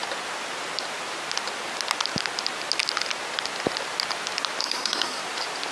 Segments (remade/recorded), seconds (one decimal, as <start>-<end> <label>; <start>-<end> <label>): 0.0-4.6 recorded; 4.6-5.2 remade; 5.2-5.7 recorded

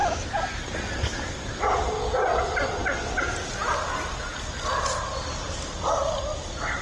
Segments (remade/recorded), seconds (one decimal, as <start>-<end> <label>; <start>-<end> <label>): 0.0-6.8 recorded

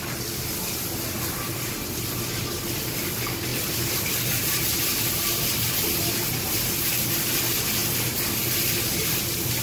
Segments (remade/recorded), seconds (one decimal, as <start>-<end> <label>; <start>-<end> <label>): 0.0-3.5 recorded; 3.5-5.9 remade; 5.9-9.6 recorded

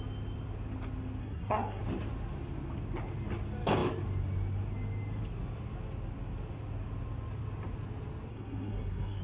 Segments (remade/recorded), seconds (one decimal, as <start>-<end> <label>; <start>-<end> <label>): 0.0-1.2 recorded; 1.2-1.8 remade; 1.8-8.3 recorded; 8.3-9.2 remade

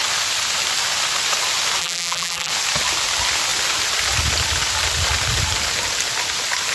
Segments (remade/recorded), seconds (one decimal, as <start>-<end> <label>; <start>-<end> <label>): 0.0-1.8 recorded; 1.8-2.5 remade; 2.5-6.7 recorded

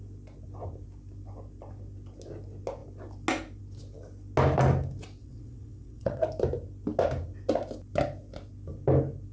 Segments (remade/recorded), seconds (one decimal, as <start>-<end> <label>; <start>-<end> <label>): 0.0-5.2 recorded; 5.2-6.2 remade; 6.2-9.3 recorded